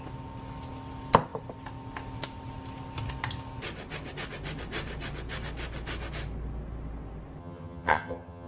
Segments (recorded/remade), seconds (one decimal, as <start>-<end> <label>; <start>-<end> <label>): 0.0-7.4 recorded; 7.4-8.5 remade